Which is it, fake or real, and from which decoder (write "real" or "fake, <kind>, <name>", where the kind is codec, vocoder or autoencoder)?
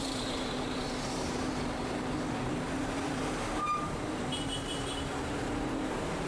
fake, vocoder, BigVGAN v2